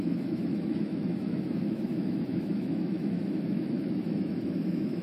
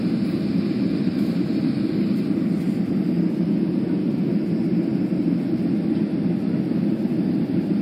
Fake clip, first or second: first